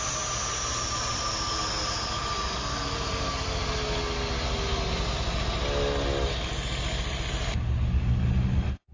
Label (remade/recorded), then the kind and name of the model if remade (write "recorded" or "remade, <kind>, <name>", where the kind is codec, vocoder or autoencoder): recorded